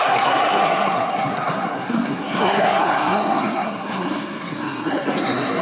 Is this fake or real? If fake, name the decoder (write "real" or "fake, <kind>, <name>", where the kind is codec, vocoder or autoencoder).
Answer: fake, codec, SNAC